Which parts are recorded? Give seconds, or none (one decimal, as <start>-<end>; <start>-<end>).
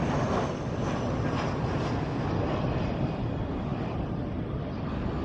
0.0-5.2